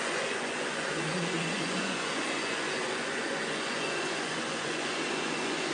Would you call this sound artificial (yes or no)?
yes